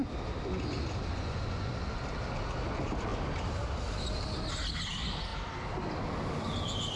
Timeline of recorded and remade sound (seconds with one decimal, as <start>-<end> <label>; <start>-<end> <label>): 0.0-1.1 recorded; 1.1-1.7 remade; 1.7-7.0 recorded